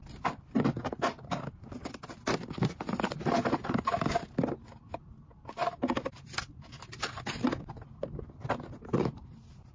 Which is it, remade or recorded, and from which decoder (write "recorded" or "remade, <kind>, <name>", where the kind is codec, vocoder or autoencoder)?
recorded